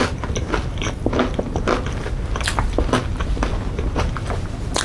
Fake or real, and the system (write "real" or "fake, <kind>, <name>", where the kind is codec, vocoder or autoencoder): real